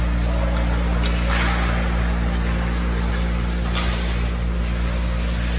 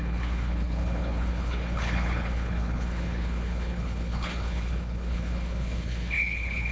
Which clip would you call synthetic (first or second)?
second